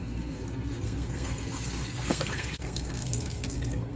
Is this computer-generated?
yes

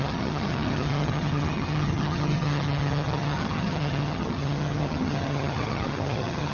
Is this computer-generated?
yes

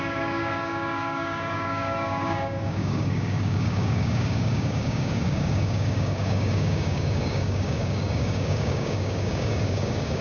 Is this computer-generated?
yes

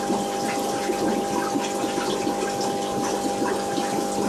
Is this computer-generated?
no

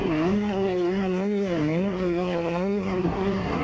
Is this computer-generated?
yes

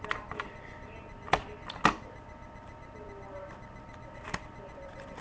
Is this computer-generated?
no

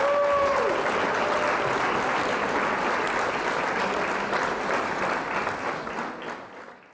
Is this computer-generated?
no